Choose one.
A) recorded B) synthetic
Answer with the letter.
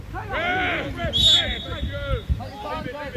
A